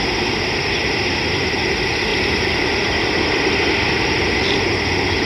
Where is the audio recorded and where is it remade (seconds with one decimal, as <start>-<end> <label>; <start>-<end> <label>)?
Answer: 0.0-2.1 recorded; 2.1-3.0 remade; 3.0-5.3 recorded